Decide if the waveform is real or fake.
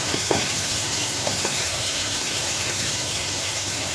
fake